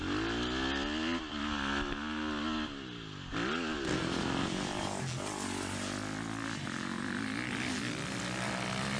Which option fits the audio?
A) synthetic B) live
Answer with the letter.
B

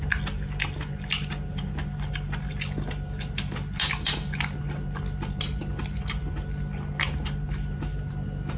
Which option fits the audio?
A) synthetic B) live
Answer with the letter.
B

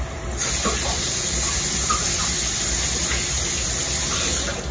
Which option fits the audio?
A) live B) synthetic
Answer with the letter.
A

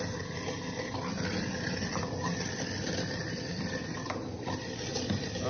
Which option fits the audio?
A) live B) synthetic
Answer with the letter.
A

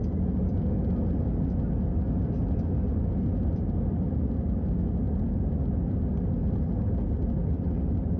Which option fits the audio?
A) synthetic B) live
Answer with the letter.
B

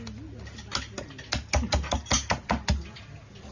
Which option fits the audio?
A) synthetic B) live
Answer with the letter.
B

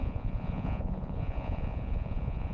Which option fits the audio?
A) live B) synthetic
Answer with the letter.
B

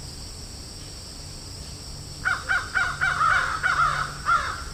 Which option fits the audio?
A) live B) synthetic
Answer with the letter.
A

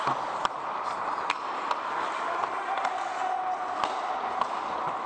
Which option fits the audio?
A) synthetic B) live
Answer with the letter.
B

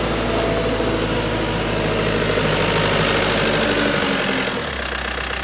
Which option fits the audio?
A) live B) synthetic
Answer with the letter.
A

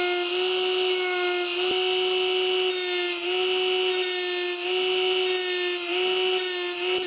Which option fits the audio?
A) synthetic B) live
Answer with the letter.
B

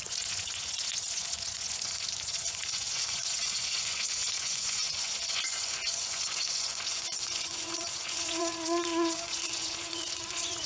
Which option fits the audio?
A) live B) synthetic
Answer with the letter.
B